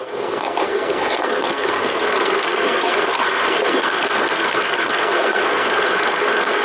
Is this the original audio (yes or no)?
no